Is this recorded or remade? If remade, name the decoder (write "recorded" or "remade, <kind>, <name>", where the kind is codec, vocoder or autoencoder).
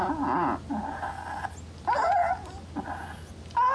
recorded